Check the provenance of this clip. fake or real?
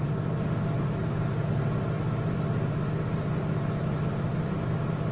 real